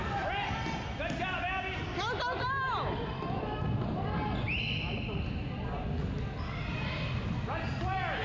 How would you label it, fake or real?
real